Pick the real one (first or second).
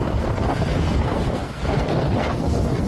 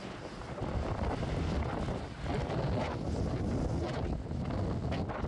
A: second